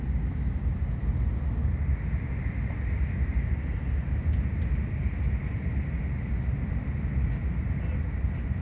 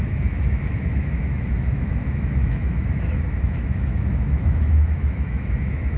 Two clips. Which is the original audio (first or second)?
first